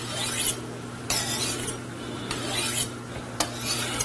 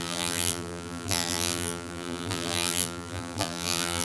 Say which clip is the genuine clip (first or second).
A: first